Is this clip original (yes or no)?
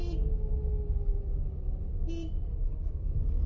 yes